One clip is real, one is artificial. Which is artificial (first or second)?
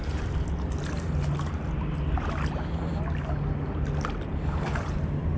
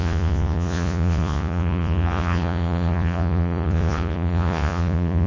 second